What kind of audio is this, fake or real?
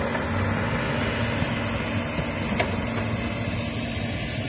real